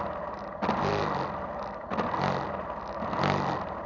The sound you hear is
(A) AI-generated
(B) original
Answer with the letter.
B